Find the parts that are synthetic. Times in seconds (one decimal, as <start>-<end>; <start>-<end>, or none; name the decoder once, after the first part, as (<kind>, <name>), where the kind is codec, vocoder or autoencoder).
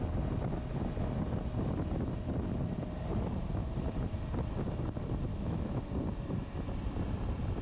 5.3-5.8 (autoencoder, DAC-VAE)